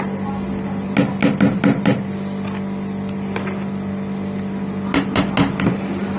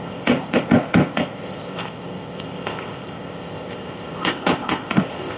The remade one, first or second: second